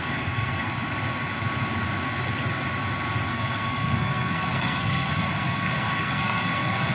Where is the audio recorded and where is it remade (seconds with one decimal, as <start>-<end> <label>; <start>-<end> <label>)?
0.0-0.7 remade; 0.7-3.3 recorded; 3.3-6.9 remade